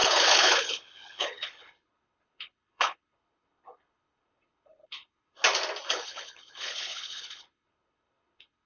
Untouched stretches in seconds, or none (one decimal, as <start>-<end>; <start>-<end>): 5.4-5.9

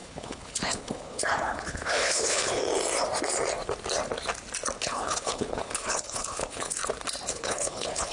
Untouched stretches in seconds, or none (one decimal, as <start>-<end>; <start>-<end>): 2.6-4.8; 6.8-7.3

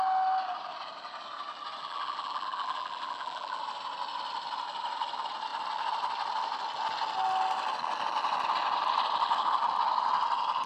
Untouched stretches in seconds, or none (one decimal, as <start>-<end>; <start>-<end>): 0.0-1.8; 3.6-10.7